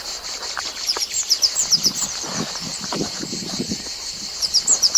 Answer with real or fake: fake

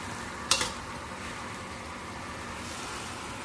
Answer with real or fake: real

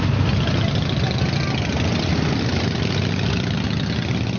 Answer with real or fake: real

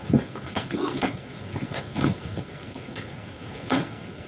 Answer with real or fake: fake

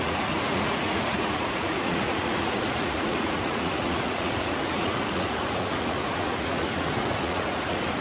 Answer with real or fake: fake